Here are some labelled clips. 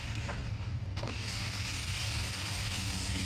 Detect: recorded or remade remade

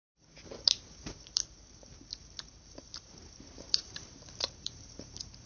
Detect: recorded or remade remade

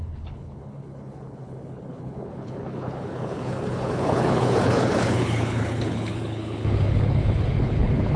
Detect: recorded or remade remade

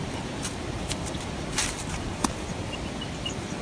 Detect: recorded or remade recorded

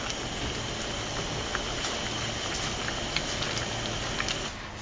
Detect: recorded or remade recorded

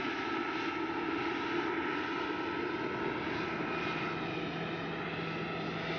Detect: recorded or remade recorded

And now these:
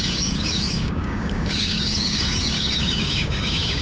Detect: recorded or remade remade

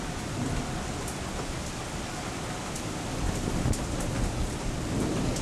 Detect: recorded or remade recorded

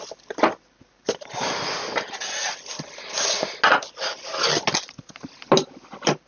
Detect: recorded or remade recorded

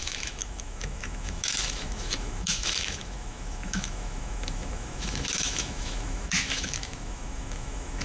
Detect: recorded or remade remade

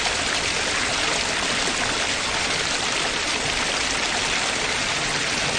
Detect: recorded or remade recorded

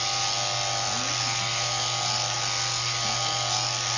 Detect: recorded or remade recorded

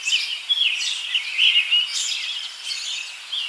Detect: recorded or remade recorded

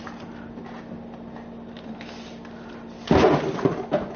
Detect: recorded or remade recorded